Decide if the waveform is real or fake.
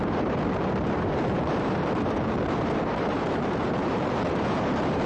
fake